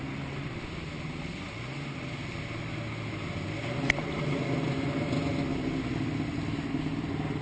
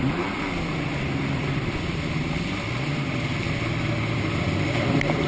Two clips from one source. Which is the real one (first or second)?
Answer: first